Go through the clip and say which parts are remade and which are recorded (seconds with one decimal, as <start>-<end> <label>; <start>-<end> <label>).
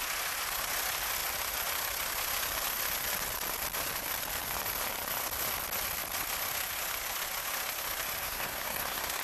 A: 0.0-8.2 recorded; 8.2-9.2 remade